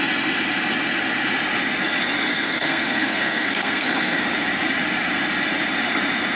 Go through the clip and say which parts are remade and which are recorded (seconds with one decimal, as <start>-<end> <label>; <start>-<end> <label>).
0.0-2.3 recorded; 2.3-4.2 remade; 4.2-6.4 recorded